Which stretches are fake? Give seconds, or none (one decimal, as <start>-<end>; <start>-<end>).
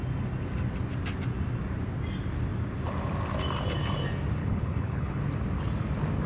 4.4-5.2